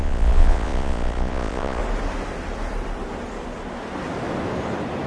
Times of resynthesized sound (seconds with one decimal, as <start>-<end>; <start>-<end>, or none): 0.0-1.8